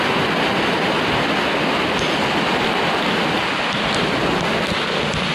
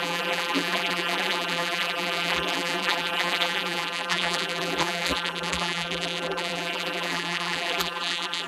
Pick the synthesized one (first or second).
second